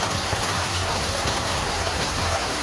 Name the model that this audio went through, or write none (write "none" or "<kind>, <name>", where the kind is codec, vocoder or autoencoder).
codec, SNAC